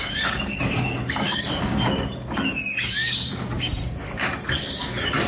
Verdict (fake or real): fake